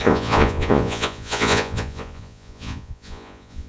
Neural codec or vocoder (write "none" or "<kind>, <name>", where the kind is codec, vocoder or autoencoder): vocoder, Vocos